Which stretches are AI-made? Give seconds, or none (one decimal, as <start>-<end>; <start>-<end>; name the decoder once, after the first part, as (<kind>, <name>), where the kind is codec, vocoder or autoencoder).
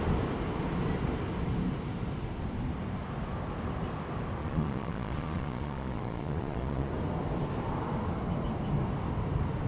4.4-6.9 (vocoder, Vocos)